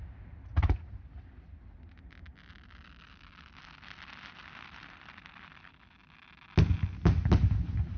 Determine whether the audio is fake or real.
real